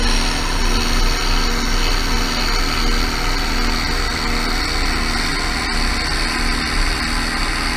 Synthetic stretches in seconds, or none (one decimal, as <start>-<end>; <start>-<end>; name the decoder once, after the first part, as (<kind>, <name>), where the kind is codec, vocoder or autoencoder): none